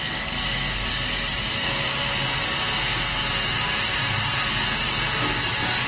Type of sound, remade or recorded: recorded